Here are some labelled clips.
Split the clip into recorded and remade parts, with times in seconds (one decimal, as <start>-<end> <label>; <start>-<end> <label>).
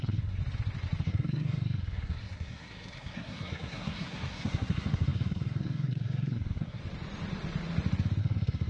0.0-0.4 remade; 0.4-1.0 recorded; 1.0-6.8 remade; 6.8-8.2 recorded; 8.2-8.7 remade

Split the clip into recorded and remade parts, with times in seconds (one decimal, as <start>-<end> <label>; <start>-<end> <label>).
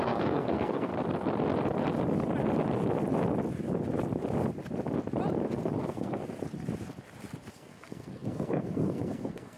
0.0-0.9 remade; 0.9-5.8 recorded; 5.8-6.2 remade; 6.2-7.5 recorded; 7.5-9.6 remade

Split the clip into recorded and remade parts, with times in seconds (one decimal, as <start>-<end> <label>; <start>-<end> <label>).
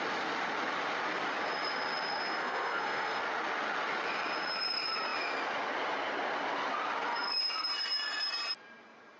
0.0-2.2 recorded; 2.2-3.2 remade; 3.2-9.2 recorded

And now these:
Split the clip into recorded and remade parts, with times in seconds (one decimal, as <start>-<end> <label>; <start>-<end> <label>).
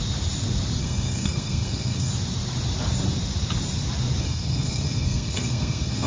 0.0-0.8 recorded; 0.8-2.1 remade; 2.1-4.2 recorded; 4.2-6.1 remade